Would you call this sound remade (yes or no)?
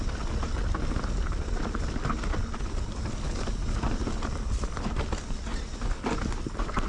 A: no